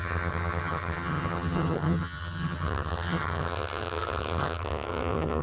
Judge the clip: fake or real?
fake